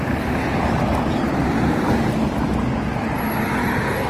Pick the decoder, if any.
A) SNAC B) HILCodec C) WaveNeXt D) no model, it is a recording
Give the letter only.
D